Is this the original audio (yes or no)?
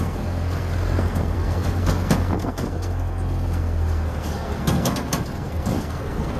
no